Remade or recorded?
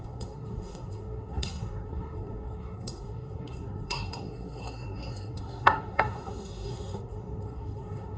remade